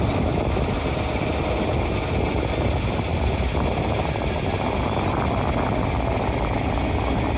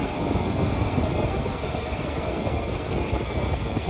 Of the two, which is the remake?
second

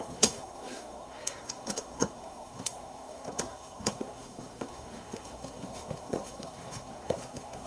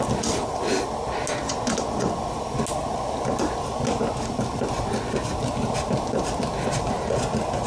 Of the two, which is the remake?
first